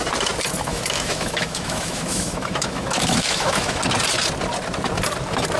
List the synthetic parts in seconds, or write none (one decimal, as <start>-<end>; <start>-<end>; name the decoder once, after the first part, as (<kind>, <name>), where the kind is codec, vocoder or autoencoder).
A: 0.7-3.8 (autoencoder, DAC-VAE)